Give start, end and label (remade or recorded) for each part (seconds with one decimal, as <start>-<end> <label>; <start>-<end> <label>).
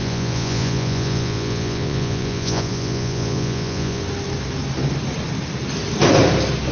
0.0-4.0 remade; 4.0-6.7 recorded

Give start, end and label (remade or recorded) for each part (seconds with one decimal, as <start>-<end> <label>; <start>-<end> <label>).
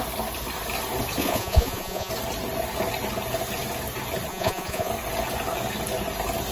0.0-1.2 recorded; 1.2-2.1 remade; 2.1-4.3 recorded; 4.3-4.9 remade; 4.9-6.5 recorded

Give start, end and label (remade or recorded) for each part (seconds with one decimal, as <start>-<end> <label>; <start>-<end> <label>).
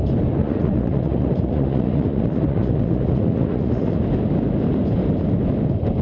0.0-0.4 recorded; 0.4-4.0 remade; 4.0-6.0 recorded